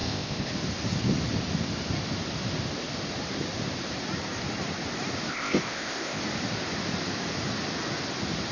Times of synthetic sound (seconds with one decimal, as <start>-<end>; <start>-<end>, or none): 0.0-0.5; 5.3-6.2